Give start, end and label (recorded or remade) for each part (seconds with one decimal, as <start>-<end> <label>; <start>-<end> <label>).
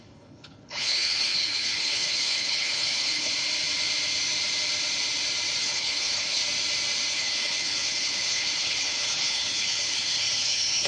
0.0-3.3 remade; 3.3-5.6 recorded; 5.6-6.4 remade; 6.4-7.1 recorded; 7.1-10.9 remade